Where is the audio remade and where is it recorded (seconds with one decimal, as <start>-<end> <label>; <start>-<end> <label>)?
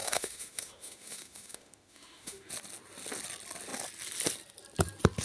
0.0-2.5 remade; 2.5-5.2 recorded